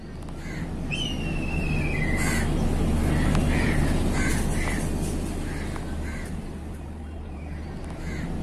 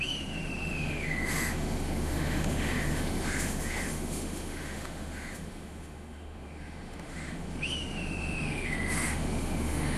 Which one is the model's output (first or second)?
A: second